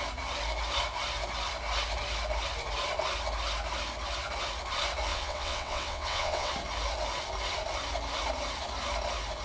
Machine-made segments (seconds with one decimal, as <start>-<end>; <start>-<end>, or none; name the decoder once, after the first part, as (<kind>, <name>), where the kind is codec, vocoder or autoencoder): 5.1-6.5 (vocoder, WaveNeXt)